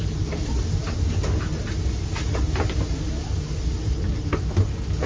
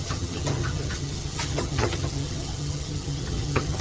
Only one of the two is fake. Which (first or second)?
second